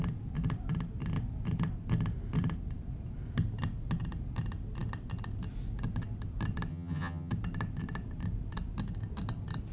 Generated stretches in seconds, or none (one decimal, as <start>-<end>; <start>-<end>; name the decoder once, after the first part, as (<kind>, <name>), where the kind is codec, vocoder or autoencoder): 6.7-7.3 (vocoder, HiFi-GAN)